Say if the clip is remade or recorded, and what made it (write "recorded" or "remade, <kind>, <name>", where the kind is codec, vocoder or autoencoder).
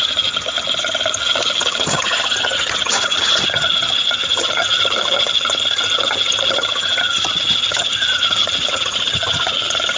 remade, vocoder, HiFi-GAN